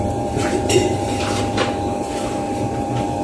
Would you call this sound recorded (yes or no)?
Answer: no